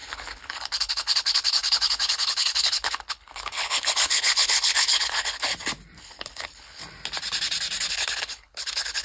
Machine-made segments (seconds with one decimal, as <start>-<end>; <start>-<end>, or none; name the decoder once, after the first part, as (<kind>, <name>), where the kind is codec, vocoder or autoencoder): 0.0-5.5 (codec, HILCodec); 6.0-6.8; 7.9-9.0